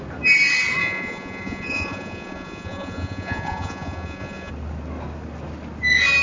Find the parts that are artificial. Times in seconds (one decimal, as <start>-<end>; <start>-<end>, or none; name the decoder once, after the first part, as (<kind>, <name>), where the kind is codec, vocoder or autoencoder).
0.8-4.5 (vocoder, Vocos)